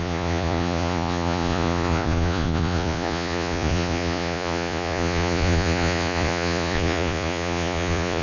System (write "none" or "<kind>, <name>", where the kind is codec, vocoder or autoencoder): vocoder, Vocos